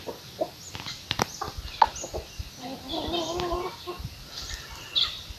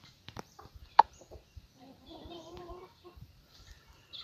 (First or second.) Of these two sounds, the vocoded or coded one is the second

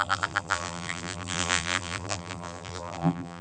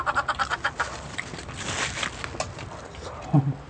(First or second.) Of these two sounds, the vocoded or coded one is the first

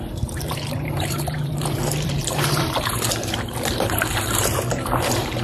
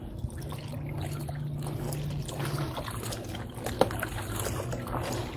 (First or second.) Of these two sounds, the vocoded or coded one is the first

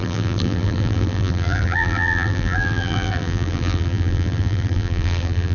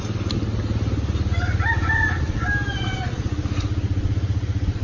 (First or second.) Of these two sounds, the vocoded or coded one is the first